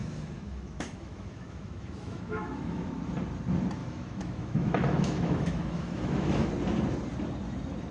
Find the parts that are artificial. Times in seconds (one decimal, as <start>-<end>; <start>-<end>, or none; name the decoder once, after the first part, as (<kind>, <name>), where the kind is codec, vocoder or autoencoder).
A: 0.0-2.9 (autoencoder, DAC-VAE); 3.8-6.5